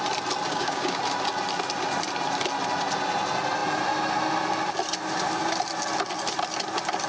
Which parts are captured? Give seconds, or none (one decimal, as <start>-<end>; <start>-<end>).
0.0-0.5; 1.0-7.1